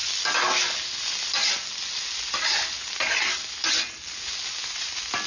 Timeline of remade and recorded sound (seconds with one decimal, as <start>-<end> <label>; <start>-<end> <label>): 0.0-5.3 recorded